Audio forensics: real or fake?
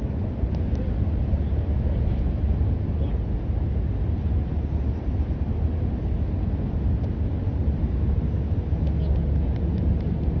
real